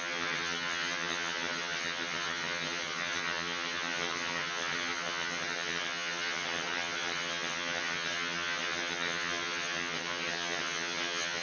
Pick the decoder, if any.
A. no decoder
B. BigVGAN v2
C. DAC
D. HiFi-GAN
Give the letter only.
D